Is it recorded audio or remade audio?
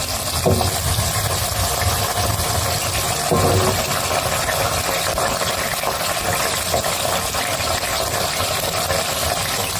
recorded